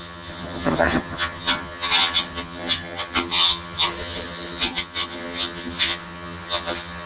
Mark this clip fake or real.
fake